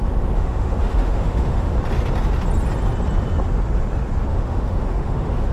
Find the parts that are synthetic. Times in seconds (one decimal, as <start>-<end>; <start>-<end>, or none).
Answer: 0.0-1.7; 4.3-5.5